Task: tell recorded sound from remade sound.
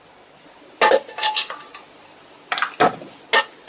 recorded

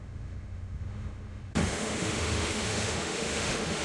remade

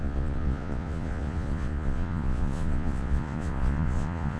remade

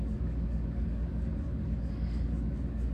remade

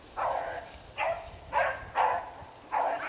recorded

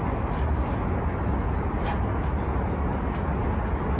recorded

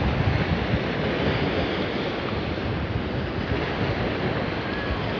recorded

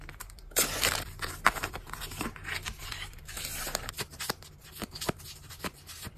remade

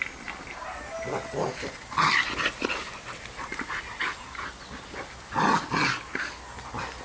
recorded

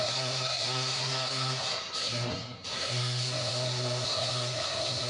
remade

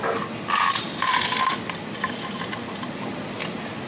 recorded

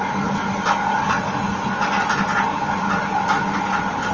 recorded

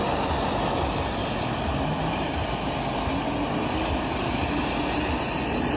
recorded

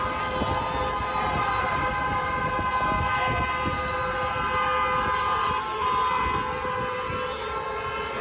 recorded